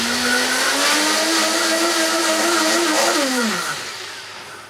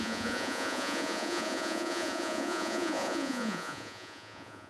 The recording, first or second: first